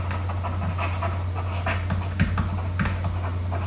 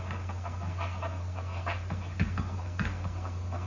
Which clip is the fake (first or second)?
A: second